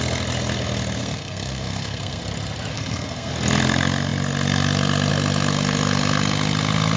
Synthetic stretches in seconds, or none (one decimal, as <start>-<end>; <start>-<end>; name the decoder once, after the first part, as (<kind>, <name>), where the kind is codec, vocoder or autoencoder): 1.0-2.2 (codec, SNAC); 2.7-3.3